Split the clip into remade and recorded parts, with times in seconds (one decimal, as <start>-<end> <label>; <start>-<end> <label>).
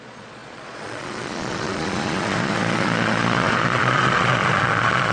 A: 0.0-5.1 remade